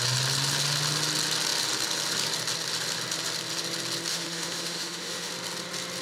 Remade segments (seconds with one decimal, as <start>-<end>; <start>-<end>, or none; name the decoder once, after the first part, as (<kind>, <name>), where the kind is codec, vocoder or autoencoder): 4.1-5.3 (autoencoder, DAC-VAE)